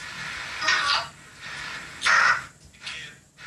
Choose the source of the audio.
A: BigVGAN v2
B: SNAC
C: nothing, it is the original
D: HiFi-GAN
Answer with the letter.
C